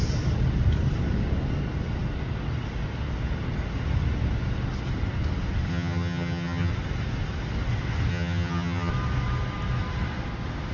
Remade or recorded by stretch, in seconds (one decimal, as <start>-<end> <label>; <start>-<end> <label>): 0.0-5.7 recorded; 5.7-6.7 remade; 6.7-8.1 recorded; 8.1-8.9 remade; 8.9-10.7 recorded